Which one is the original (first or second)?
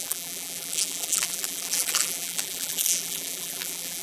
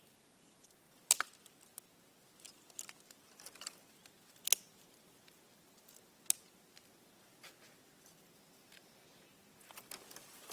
second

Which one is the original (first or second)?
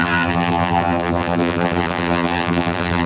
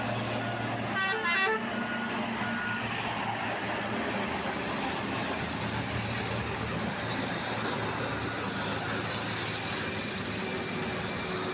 second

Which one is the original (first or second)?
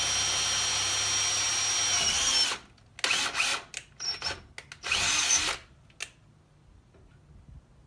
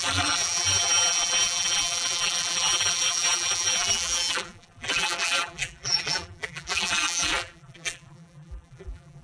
first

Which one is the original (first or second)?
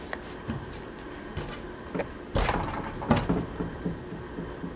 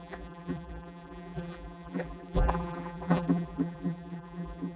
first